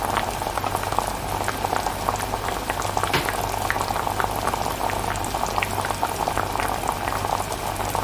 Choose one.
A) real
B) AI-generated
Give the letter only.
A